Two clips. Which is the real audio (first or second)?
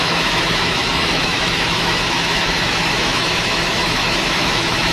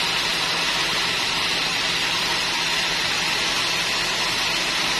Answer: second